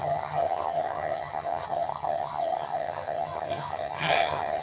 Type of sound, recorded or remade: remade